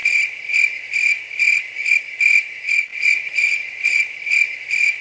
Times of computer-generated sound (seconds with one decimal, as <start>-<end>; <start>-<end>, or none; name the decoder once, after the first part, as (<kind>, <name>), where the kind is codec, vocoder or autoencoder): 2.9-4.0 (vocoder, Vocos)